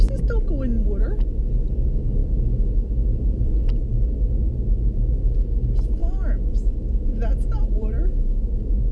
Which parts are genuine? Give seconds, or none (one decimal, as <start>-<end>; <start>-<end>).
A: 0.0-8.9